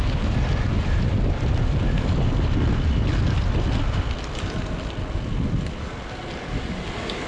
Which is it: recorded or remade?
recorded